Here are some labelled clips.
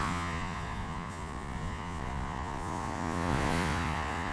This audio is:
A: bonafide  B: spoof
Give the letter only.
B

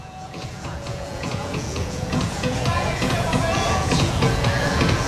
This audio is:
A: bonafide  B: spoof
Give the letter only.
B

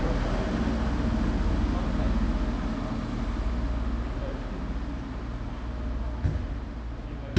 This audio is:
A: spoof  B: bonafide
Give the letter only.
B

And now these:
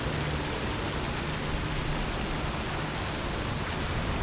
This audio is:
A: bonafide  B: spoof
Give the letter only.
A